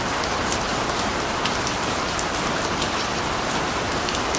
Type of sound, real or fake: real